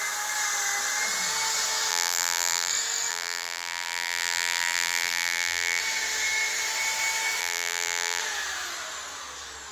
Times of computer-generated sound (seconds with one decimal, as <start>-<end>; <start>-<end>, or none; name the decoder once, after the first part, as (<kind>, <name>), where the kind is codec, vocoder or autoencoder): 1.9-2.7 (vocoder, BigVGAN v2); 3.1-5.8; 7.4-8.2